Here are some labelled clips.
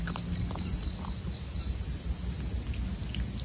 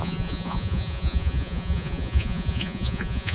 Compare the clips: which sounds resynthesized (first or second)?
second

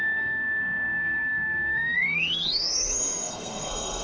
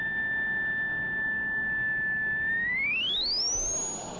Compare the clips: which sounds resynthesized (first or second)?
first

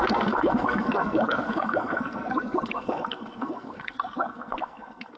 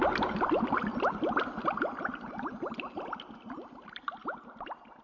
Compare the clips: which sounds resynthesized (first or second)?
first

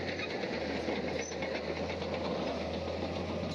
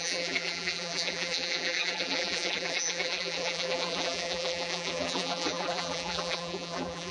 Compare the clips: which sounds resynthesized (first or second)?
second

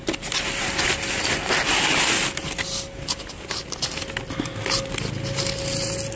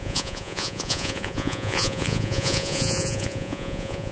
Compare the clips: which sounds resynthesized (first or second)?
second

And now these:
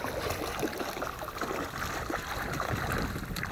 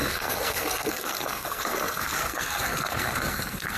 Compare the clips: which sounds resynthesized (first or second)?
second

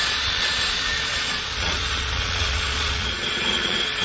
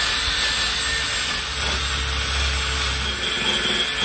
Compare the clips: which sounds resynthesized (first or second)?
first